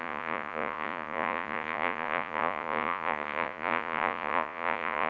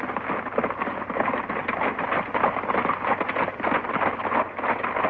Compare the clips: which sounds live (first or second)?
second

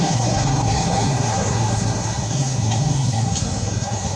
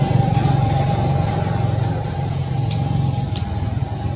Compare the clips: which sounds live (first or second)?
second